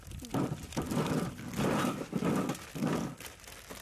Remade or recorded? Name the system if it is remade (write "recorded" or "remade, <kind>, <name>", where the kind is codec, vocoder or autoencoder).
recorded